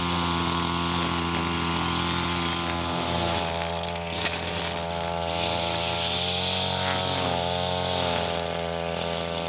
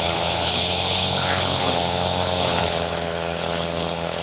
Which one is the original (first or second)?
first